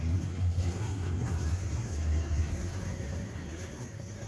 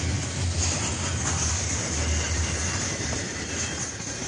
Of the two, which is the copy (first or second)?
first